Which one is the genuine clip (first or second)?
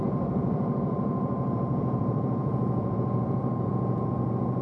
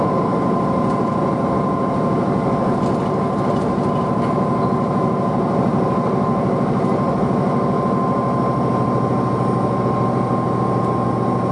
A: second